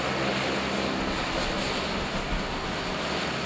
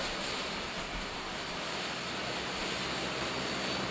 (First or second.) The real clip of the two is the first